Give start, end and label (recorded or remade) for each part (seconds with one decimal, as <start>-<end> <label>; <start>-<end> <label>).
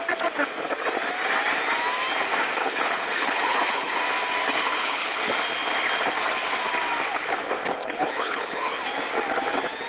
0.0-2.6 recorded; 2.6-4.0 remade; 4.0-4.5 recorded; 4.5-5.3 remade; 5.3-7.8 recorded; 7.8-8.8 remade; 8.8-9.9 recorded